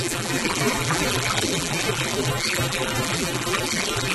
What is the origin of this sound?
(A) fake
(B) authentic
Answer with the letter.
A